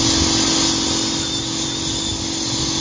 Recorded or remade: recorded